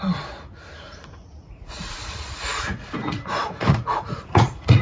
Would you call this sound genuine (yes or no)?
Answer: no